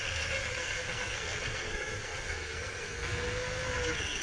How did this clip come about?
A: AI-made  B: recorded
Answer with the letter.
A